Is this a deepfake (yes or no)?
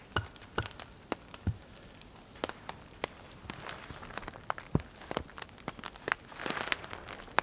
no